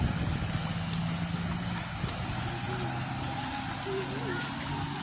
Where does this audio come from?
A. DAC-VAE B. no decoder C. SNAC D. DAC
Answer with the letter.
B